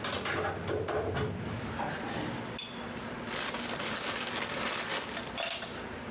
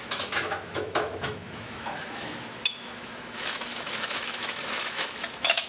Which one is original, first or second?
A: first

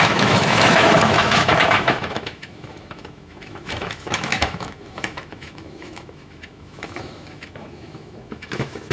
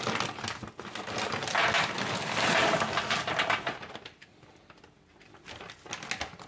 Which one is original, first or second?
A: second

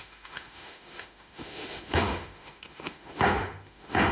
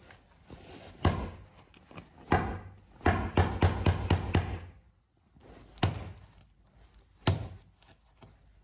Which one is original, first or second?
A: second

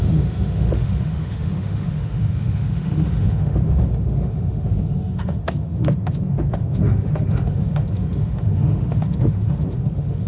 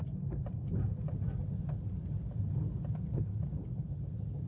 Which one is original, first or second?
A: second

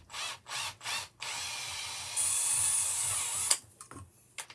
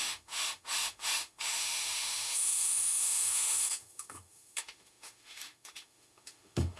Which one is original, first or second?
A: first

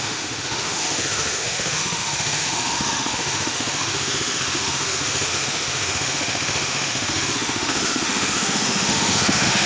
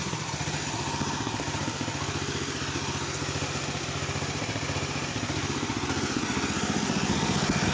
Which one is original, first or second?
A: second